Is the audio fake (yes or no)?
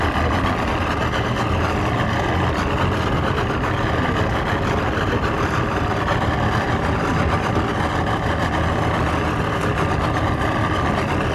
no